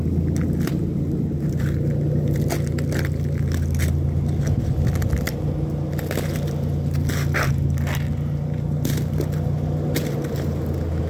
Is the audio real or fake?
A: real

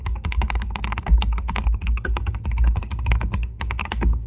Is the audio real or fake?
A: fake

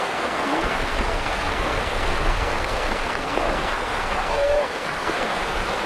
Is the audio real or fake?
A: fake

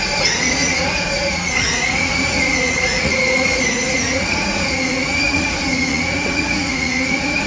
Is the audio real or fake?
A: fake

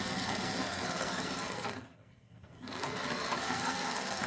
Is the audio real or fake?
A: fake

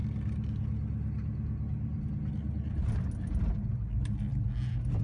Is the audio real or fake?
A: real